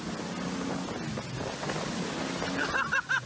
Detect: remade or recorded recorded